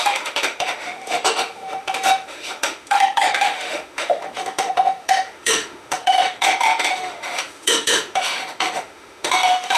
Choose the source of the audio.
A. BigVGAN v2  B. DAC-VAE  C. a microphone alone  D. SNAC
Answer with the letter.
B